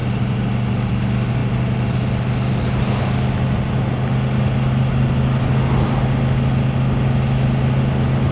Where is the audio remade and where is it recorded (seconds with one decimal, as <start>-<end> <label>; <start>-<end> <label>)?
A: 0.0-8.3 recorded